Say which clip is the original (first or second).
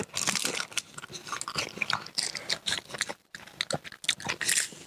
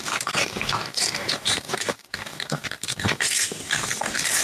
first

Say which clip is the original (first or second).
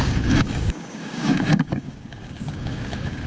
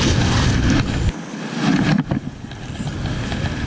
second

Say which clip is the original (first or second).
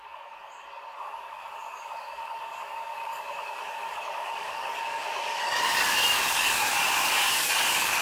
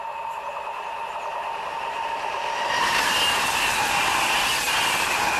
second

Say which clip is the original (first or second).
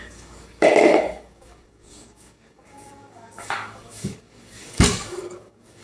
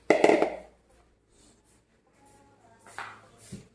second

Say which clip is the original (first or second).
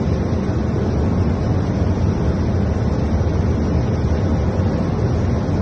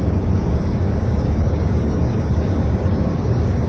first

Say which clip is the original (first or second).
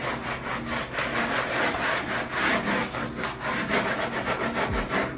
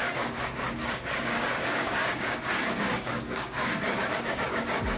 first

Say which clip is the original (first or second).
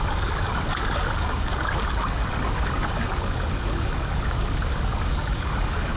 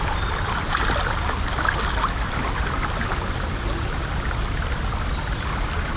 second